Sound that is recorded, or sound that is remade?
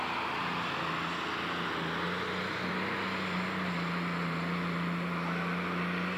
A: recorded